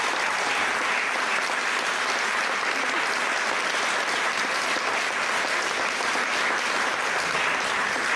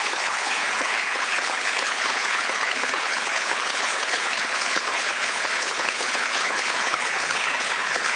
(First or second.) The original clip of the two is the first